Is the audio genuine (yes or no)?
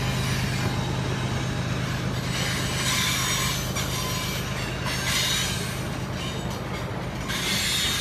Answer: yes